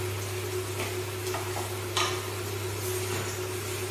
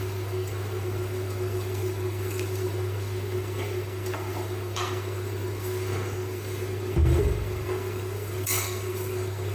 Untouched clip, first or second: first